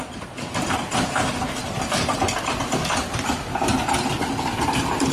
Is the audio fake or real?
real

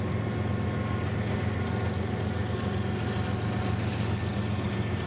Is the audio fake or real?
real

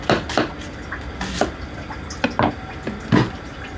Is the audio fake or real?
real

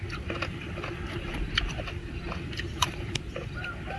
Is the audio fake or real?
real